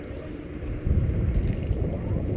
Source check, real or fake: fake